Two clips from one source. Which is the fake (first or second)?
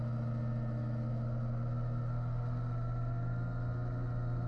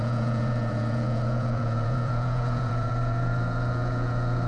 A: second